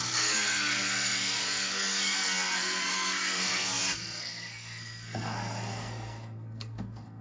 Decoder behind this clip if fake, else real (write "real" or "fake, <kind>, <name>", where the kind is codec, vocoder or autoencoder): fake, codec, SNAC